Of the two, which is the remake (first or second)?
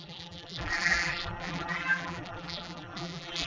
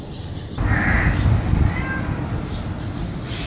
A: first